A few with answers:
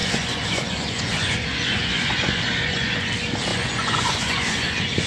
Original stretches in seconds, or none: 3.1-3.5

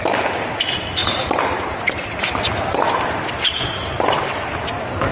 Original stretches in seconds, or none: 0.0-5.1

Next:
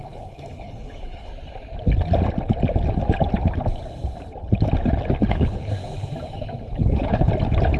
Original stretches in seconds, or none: 1.3-5.3; 5.7-6.8; 7.3-7.8

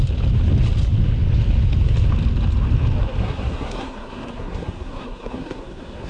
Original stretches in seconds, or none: 0.0-3.2

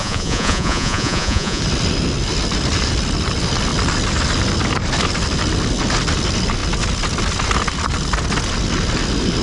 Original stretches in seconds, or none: 1.6-9.4

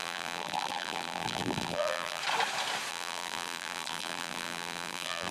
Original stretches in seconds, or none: 2.2-2.9

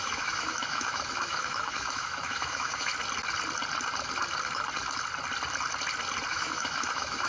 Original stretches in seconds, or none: 2.9-6.3

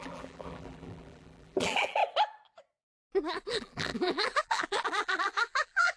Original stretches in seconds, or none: 2.0-3.5